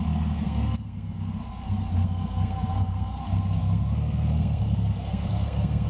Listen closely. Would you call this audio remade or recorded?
remade